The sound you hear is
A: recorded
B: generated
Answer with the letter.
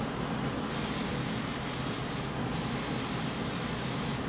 A